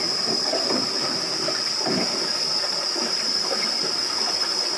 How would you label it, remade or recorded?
recorded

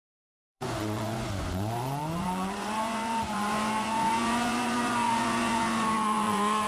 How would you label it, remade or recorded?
remade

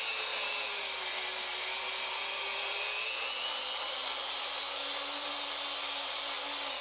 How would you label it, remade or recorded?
recorded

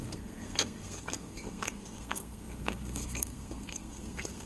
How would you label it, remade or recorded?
remade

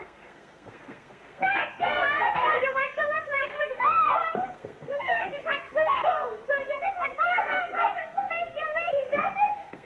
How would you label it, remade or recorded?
remade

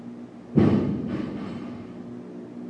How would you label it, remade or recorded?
recorded